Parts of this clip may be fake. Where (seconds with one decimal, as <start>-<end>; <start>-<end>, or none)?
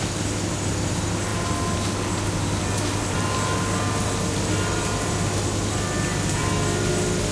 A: none